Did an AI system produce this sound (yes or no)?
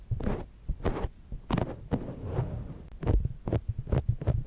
no